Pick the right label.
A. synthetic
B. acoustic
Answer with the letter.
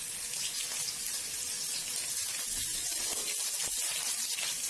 B